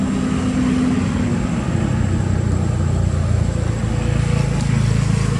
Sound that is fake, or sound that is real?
real